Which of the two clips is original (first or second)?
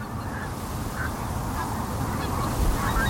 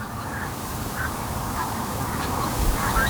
first